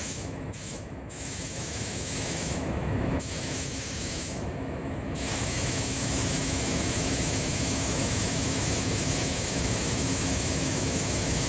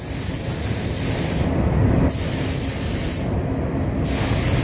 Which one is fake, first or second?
first